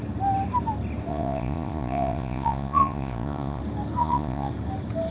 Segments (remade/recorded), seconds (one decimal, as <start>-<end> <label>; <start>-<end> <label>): 0.0-1.1 recorded; 1.1-3.6 remade; 3.6-4.0 recorded; 4.0-4.5 remade; 4.5-5.1 recorded

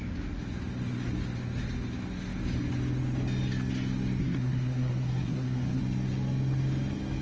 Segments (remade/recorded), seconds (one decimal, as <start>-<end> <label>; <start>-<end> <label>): 0.0-4.2 recorded; 4.2-5.8 remade; 5.8-7.2 recorded